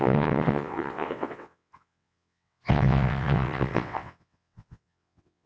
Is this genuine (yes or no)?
no